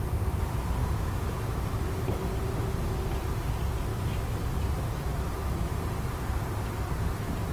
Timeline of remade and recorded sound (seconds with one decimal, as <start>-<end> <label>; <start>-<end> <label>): 0.0-0.8 recorded; 0.8-2.0 remade; 2.0-3.9 recorded; 3.9-4.5 remade; 4.5-7.5 recorded